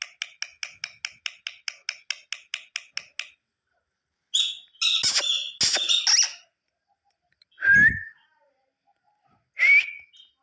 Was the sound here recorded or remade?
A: recorded